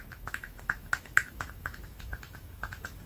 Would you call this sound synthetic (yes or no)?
yes